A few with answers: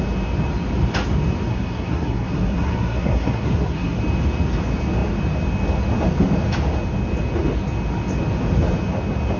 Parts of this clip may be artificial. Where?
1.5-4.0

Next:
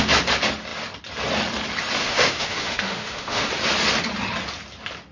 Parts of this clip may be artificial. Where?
2.0-3.5

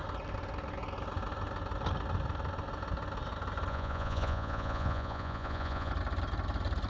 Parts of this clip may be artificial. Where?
3.7-5.9

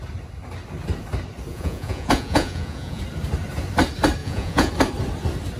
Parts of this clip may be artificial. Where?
1.5-3.0; 4.2-4.7